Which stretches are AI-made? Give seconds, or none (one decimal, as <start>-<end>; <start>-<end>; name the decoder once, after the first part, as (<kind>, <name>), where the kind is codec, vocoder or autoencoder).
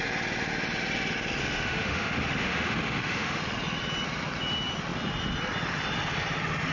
1.4-3.4 (autoencoder, DAC-VAE)